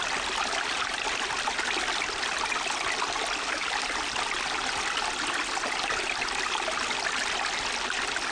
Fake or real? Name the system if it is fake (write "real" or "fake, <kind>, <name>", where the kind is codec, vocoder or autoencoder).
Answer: real